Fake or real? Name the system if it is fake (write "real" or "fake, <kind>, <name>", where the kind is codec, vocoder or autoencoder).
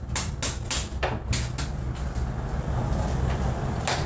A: real